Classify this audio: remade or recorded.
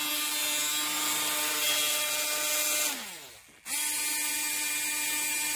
recorded